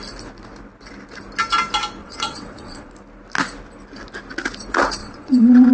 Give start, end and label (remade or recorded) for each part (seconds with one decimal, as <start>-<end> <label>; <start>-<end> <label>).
0.0-2.0 recorded; 2.0-2.9 remade; 2.9-5.0 recorded; 5.0-5.7 remade